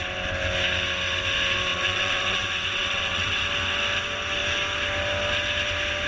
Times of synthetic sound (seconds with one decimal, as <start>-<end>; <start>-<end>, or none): 1.7-3.4